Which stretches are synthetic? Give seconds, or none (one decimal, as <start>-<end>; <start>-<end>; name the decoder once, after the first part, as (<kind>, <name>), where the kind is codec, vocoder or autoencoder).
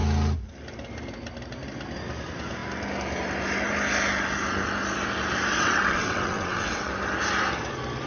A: 5.5-6.9 (vocoder, WaveNeXt)